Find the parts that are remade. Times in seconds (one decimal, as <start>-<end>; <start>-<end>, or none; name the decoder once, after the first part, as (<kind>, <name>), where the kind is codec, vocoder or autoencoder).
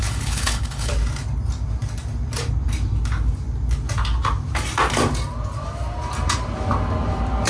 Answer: 0.0-0.9 (codec, HILCodec)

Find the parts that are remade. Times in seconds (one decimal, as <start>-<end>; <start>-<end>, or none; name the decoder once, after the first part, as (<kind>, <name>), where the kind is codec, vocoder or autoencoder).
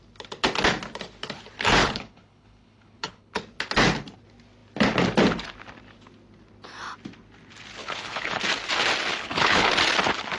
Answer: 1.8-3.4 (codec, HILCodec); 7.8-8.4; 9.1-9.7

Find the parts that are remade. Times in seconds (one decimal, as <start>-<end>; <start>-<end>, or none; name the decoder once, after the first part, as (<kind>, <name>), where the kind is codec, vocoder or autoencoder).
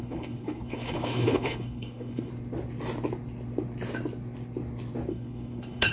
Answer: 0.0-2.3 (codec, HILCodec); 5.1-5.9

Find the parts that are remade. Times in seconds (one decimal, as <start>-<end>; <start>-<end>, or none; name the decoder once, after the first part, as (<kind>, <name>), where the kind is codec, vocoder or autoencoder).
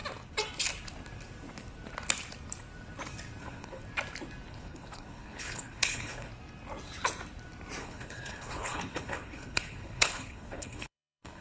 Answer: 3.4-3.8 (codec, HILCodec); 4.5-6.3; 7.8-11.4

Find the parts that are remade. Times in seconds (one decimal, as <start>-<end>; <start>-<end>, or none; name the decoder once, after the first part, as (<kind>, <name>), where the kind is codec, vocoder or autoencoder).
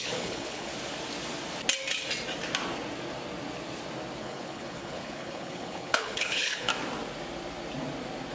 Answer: 0.0-0.7 (codec, HILCodec); 4.2-6.7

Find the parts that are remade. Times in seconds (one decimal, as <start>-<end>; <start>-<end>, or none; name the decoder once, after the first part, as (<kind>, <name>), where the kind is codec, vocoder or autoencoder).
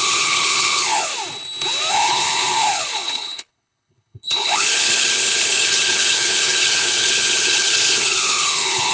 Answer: 0.0-1.1 (codec, HILCodec); 1.9-8.9